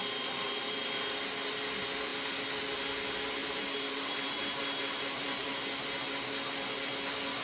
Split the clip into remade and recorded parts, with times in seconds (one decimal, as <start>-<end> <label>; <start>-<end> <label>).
0.0-1.2 remade; 1.2-3.4 recorded; 3.4-5.5 remade; 5.5-7.4 recorded